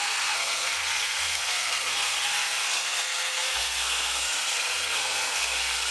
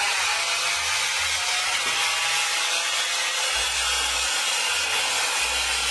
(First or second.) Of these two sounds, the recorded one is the second